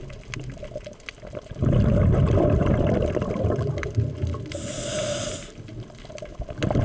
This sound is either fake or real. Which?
real